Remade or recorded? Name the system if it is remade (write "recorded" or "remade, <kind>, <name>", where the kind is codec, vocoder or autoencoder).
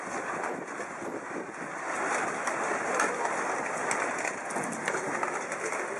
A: recorded